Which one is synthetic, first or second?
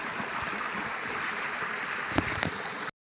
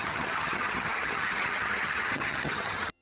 second